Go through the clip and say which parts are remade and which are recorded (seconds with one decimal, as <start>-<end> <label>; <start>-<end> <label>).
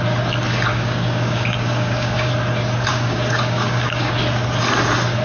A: 0.0-0.7 recorded; 0.7-2.3 remade; 2.3-2.9 recorded; 2.9-4.1 remade; 4.1-5.2 recorded